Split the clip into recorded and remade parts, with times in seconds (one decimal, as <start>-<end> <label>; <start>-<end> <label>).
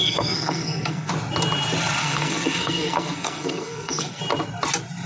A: 0.0-1.1 remade; 1.1-2.0 recorded; 2.0-4.2 remade; 4.2-5.1 recorded